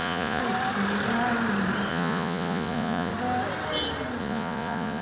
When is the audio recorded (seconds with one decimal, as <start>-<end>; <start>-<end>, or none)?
0.4-1.9; 3.1-4.2